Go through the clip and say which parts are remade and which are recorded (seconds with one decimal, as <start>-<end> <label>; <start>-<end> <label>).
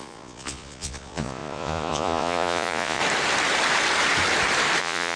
0.0-3.0 remade; 3.0-4.8 recorded; 4.8-5.2 remade